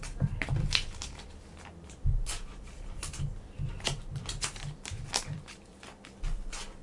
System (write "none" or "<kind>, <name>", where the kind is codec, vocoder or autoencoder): vocoder, BigVGAN v2